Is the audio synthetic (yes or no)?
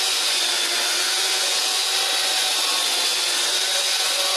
yes